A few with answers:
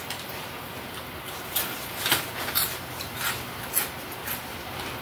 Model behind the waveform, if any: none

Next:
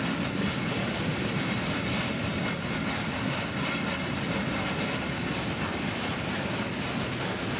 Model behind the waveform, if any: none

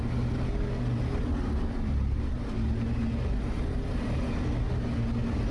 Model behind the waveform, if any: none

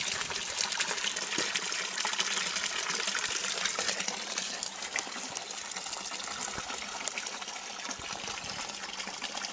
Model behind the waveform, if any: none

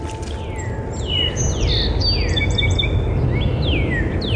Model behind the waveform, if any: none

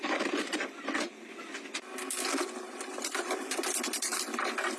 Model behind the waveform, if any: vocoder, BigVGAN v2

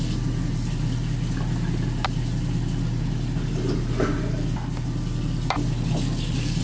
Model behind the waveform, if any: none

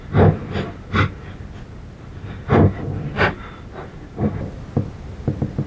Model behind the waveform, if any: none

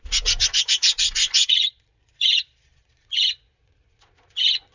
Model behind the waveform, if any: vocoder, Vocos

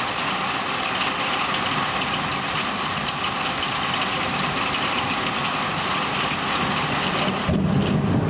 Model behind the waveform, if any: none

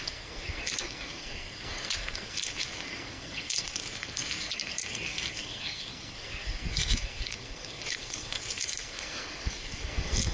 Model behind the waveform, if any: codec, SNAC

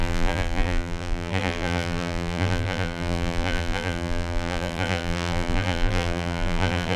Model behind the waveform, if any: vocoder, BigVGAN v2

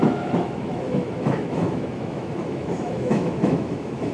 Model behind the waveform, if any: autoencoder, DAC-VAE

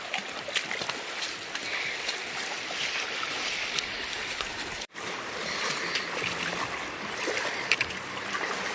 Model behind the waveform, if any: vocoder, BigVGAN v2